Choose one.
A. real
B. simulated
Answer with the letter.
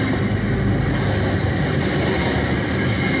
A